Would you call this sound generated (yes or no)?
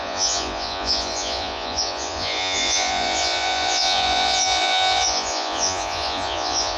yes